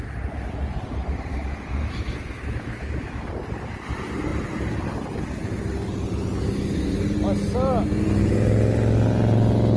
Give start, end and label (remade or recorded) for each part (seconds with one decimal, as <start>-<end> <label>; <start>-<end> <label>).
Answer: 0.0-1.3 recorded; 1.3-3.2 remade; 3.2-9.8 recorded